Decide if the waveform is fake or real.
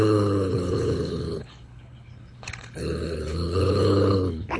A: fake